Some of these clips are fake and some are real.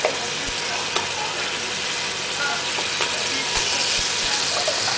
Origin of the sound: real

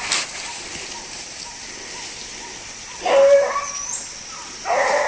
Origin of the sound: real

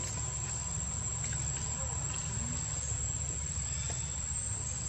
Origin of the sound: real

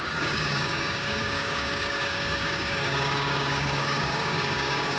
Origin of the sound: fake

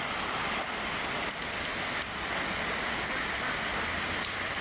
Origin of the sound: real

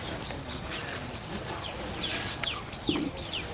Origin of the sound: real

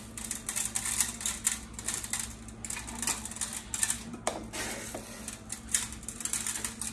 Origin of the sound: real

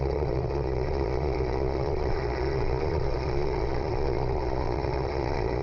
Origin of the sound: fake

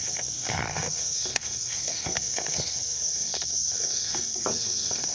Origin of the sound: fake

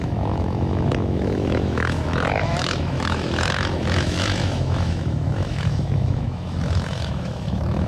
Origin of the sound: fake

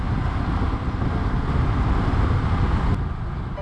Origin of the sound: real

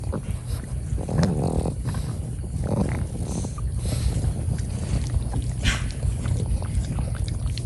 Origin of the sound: real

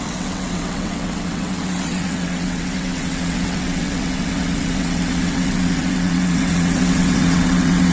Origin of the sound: fake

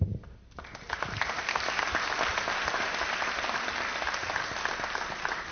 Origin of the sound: real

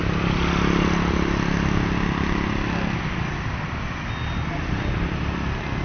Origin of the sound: real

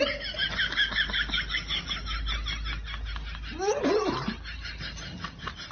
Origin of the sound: real